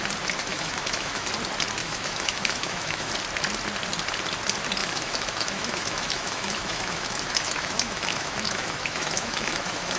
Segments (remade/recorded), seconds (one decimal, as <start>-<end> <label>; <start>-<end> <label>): 0.0-0.4 recorded; 0.4-1.3 remade; 1.3-1.8 recorded; 1.8-3.1 remade; 3.1-4.8 recorded; 4.8-10.0 remade